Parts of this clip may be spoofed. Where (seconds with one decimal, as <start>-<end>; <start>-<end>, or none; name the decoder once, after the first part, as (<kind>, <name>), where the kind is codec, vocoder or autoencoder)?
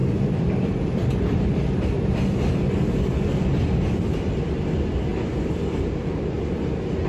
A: 0.0-2.2 (vocoder, BigVGAN v2); 5.1-5.9